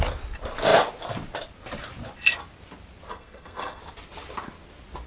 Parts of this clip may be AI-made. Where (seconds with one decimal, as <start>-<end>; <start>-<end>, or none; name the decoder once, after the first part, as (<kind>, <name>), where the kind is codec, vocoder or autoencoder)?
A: 3.1-3.8 (codec, SNAC)